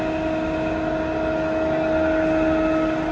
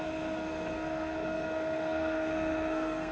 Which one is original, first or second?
first